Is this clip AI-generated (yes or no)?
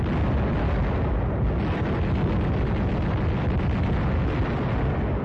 no